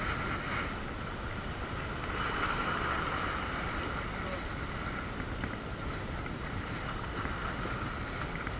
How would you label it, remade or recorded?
recorded